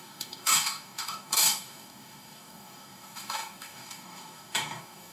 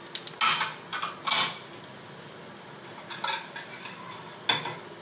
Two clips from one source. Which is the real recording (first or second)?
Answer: second